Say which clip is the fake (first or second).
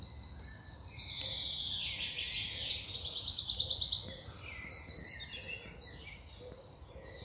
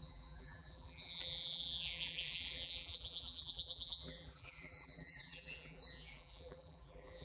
second